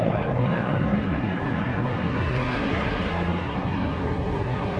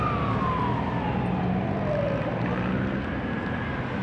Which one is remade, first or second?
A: first